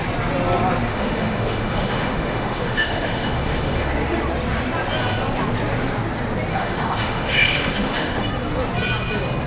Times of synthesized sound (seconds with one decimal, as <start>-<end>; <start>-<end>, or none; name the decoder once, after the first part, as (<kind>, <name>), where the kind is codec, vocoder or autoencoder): 0.9-3.9 (autoencoder, DAC-VAE); 6.5-8.2